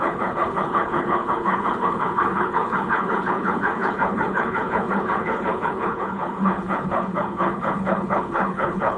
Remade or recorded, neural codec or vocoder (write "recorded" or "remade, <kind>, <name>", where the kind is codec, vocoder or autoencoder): remade, codec, HILCodec